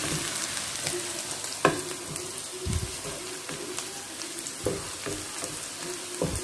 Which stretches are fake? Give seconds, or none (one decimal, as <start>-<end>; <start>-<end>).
none